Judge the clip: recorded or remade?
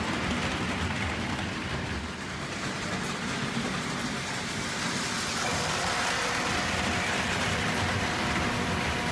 recorded